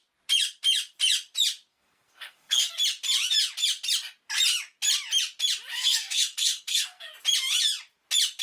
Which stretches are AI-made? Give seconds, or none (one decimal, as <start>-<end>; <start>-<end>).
1.7-2.7; 5.7-7.1